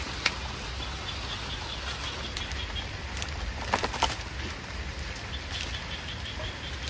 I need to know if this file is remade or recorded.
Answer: recorded